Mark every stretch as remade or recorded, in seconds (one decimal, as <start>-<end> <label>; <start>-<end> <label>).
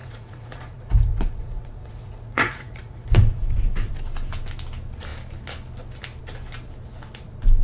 0.0-3.9 remade; 3.9-7.6 recorded